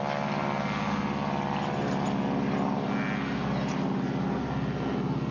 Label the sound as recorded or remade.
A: recorded